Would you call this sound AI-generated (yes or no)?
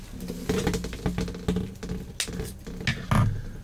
no